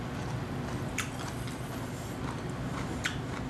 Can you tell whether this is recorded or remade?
recorded